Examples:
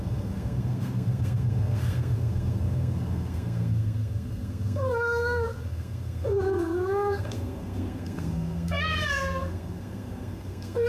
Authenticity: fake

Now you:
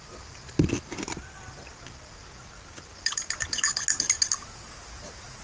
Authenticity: real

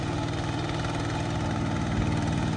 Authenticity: real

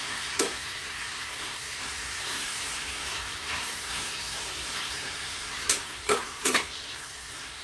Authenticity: fake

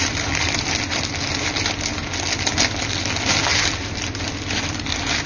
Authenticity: real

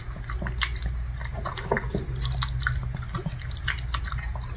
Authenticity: real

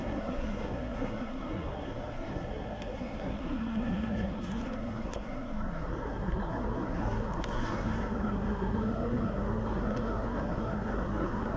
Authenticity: fake